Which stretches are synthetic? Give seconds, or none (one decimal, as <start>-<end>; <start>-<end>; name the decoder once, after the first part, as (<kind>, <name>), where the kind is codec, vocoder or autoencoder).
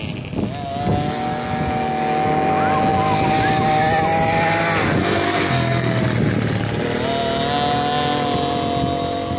5.0-6.0 (codec, SNAC)